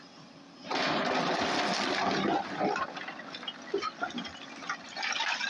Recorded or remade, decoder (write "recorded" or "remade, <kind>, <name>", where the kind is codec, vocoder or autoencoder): recorded